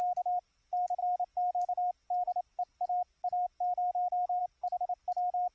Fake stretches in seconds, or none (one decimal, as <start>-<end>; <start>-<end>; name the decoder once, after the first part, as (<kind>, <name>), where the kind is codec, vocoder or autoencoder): none